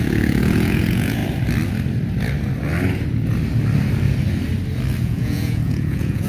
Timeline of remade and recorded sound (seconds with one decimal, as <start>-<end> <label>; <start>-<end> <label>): 0.0-1.2 remade; 1.2-5.0 recorded; 5.0-6.3 remade